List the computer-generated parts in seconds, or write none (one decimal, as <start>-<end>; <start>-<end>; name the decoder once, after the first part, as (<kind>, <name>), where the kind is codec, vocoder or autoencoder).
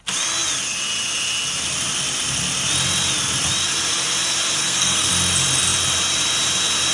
4.6-5.1 (codec, SNAC)